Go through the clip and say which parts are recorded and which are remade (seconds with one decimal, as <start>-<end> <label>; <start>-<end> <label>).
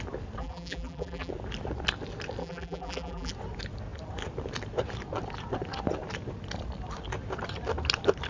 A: 0.0-0.4 recorded; 0.4-1.3 remade; 1.3-2.4 recorded; 2.4-3.3 remade; 3.3-8.3 recorded